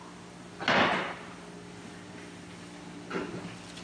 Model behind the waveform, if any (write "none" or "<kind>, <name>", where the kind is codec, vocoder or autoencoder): none